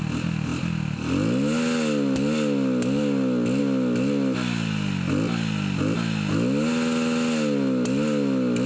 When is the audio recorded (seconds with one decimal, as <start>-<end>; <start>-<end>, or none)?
0.0-8.7